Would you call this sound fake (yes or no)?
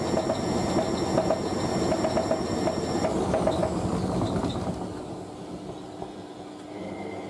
no